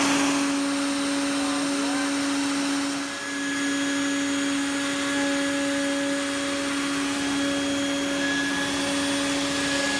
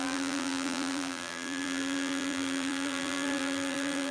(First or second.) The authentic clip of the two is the first